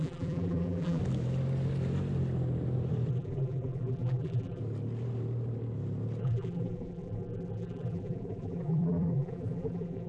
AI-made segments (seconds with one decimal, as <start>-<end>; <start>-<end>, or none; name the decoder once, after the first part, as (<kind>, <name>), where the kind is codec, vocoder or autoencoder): 0.0-1.0 (vocoder, BigVGAN v2); 3.1-4.6; 6.2-10.1